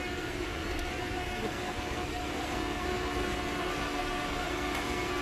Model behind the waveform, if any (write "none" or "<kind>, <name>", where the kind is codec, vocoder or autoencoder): codec, SNAC